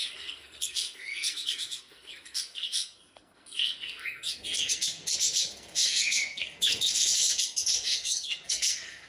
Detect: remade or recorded remade